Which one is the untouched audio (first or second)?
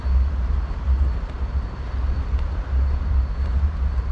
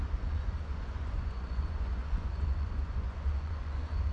first